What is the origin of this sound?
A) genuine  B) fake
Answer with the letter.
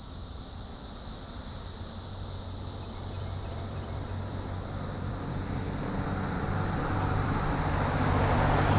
B